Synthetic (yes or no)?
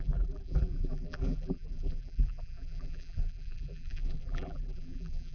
yes